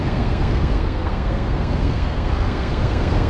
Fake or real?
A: fake